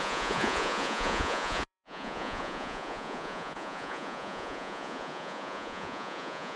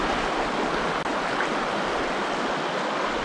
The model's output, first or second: first